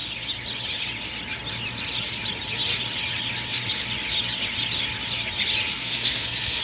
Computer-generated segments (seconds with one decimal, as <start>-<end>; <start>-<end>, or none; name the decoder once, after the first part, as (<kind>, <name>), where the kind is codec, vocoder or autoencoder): 5.7-6.6 (codec, SNAC)